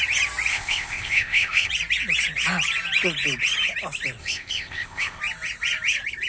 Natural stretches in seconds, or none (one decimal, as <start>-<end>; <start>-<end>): 0.0-0.5; 1.7-4.2; 5.2-6.3